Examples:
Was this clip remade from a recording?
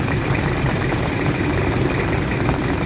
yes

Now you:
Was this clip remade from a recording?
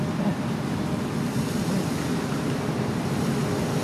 no